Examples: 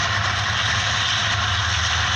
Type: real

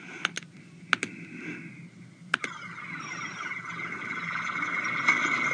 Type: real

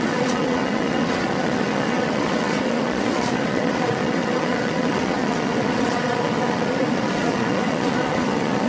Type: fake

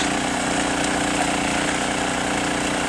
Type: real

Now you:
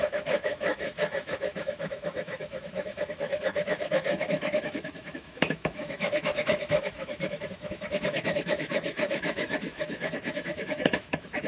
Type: fake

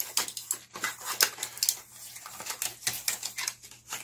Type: real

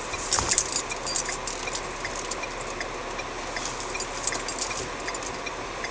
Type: real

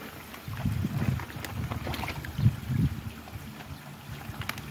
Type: real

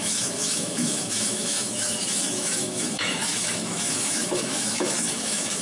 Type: fake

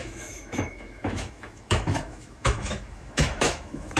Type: fake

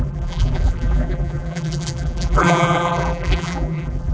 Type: fake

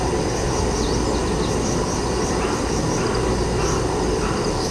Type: real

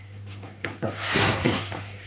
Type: fake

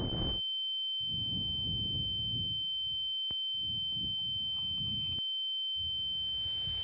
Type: real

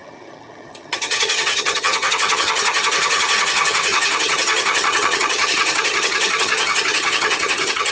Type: fake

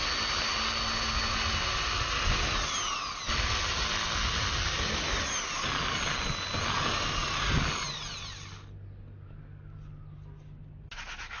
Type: real